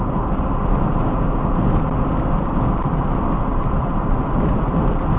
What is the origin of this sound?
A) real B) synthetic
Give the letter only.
A